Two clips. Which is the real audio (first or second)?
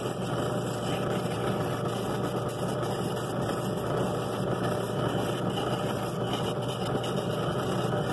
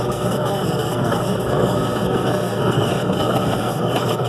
first